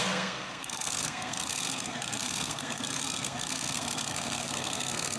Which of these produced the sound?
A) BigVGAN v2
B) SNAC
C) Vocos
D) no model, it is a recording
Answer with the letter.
B